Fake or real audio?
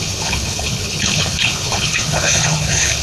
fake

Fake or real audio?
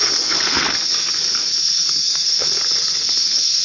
fake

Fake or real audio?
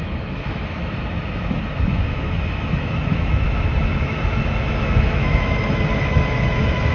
fake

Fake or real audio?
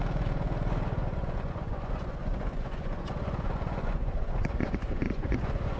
fake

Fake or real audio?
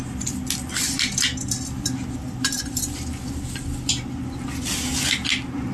real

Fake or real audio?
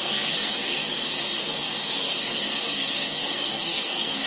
fake